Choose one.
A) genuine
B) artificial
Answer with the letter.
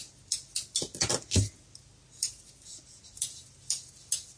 A